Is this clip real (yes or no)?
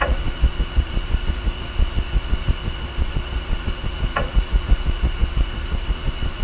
no